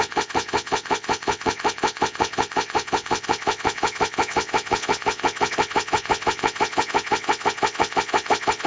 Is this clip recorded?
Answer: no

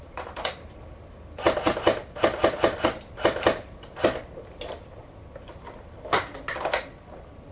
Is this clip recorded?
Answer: no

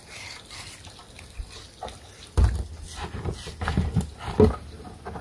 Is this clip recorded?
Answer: yes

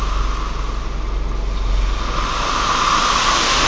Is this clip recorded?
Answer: yes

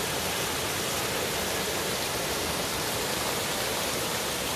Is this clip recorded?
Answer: yes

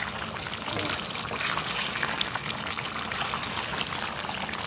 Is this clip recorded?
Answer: yes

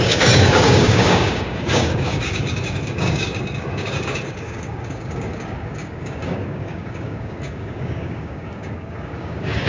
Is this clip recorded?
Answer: no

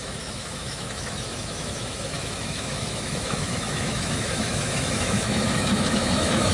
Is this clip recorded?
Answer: no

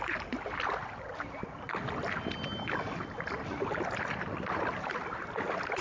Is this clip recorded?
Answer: yes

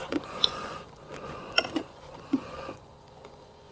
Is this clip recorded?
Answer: no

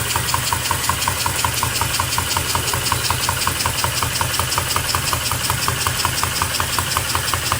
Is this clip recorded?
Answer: yes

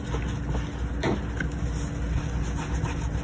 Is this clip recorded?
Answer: yes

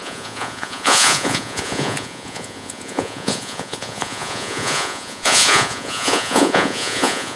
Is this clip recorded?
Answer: no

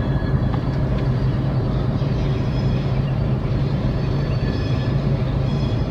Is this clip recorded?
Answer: no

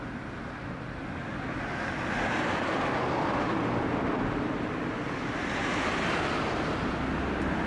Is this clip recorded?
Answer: yes